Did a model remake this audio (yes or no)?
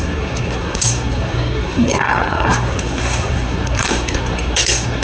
yes